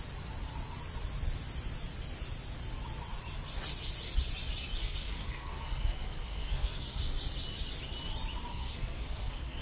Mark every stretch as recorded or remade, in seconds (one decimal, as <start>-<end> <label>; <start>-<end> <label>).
0.0-4.8 recorded; 4.8-7.0 remade; 7.0-8.5 recorded; 8.5-9.6 remade